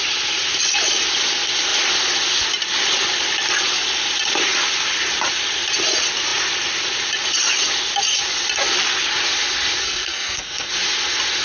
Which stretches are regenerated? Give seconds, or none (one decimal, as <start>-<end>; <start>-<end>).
9.8-10.7